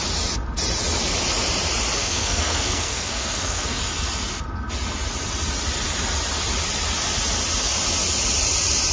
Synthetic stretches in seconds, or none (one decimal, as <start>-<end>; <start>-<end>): 2.0-3.8